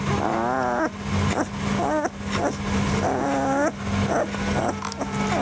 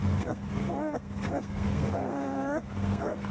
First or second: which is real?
first